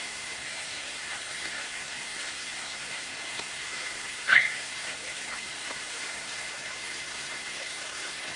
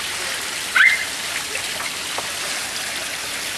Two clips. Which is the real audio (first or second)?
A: second